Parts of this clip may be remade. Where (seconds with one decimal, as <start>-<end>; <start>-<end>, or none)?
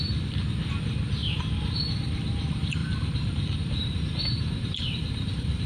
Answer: 0.0-1.2; 2.1-5.7